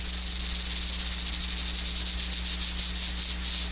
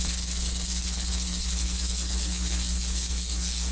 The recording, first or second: first